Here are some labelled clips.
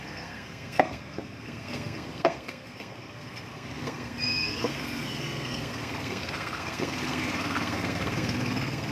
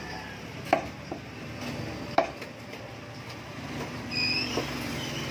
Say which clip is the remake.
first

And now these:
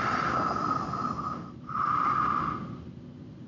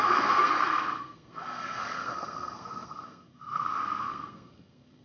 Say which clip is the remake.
second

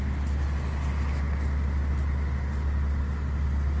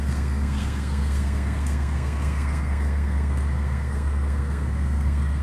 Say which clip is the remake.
second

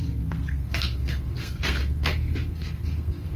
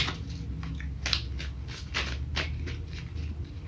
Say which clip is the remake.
first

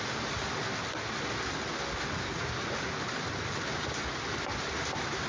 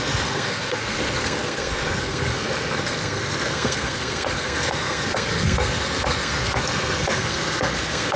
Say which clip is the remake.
second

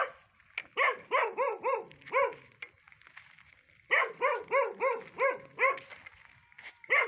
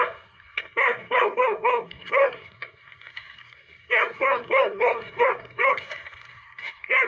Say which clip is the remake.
second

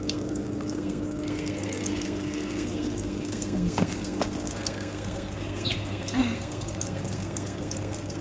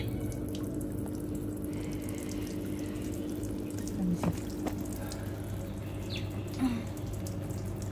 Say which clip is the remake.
first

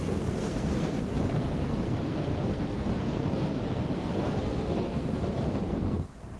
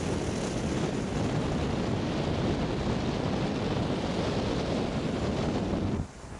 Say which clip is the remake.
first